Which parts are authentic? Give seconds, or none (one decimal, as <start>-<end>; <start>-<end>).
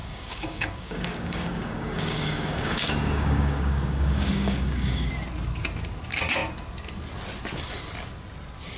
5.1-8.8